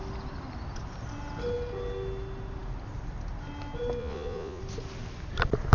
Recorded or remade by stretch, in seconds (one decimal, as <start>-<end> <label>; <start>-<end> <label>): 0.0-4.0 recorded; 4.0-4.6 remade; 4.6-5.7 recorded